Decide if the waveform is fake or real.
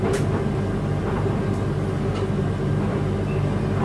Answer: real